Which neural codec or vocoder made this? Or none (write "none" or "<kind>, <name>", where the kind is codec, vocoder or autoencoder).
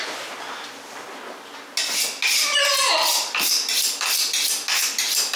none